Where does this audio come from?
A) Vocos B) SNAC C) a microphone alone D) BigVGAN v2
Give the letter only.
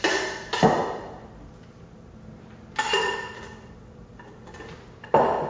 C